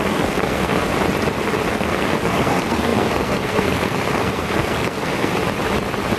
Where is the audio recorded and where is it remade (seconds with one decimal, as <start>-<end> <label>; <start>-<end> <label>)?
0.0-0.9 remade; 0.9-1.7 recorded; 1.7-5.3 remade; 5.3-6.2 recorded